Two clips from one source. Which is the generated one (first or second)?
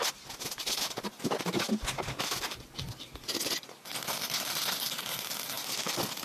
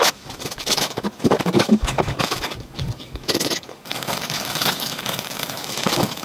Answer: second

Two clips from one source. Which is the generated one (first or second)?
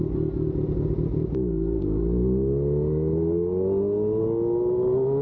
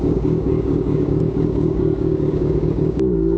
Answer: second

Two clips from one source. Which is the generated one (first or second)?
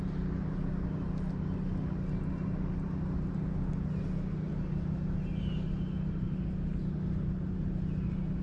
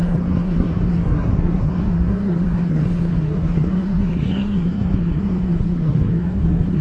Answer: second